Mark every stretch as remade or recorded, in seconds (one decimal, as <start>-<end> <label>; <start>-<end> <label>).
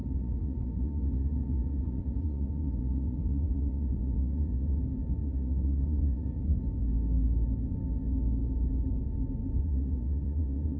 0.0-4.8 remade; 4.8-5.2 recorded; 5.2-6.6 remade; 6.6-9.6 recorded; 9.6-10.8 remade